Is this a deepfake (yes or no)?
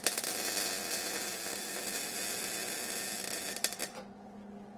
no